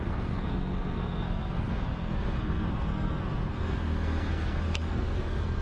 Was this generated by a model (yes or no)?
yes